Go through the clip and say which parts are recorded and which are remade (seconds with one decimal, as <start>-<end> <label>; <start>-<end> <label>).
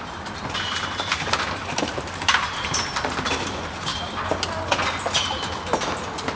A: 0.0-3.9 remade; 3.9-6.4 recorded